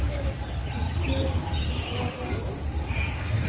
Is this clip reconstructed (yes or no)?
no